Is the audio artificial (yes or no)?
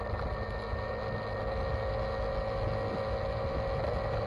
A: no